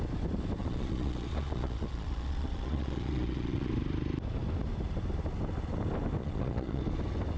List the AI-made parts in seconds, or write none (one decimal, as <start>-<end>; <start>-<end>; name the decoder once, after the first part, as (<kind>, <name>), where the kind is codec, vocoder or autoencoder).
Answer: 0.6-3.7 (vocoder, Vocos); 6.2-6.8